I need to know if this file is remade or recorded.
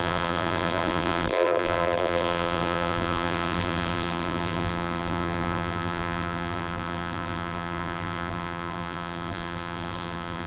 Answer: remade